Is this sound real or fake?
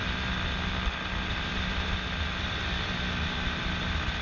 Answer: real